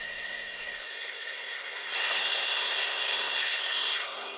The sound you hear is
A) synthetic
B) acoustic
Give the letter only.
A